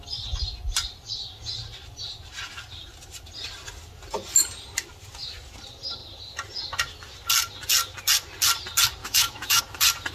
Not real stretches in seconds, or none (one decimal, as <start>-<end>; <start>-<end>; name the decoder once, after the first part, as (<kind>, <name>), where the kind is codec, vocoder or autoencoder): 9.0-9.6 (autoencoder, DAC-VAE)